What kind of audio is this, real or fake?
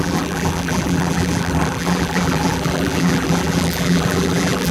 fake